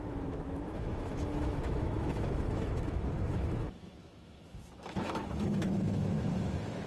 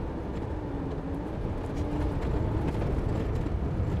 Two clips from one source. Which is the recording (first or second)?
second